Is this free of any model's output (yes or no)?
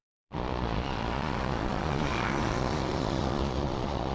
no